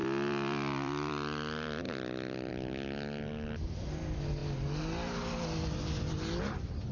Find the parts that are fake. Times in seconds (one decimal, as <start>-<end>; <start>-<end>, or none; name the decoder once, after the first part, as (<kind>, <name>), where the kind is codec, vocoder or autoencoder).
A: 0.0-2.5 (vocoder, BigVGAN v2)